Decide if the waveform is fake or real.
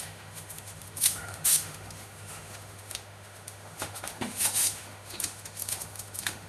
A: fake